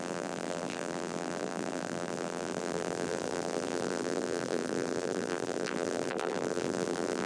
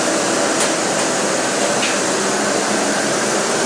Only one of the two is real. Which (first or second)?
second